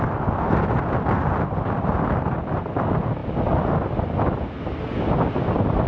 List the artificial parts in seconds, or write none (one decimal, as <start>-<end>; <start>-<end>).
none